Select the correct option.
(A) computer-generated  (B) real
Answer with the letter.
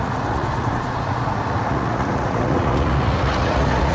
A